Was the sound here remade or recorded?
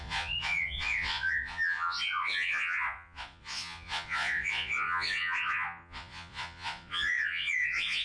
remade